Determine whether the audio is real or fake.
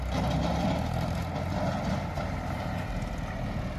real